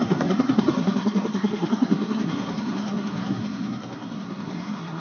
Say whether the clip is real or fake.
fake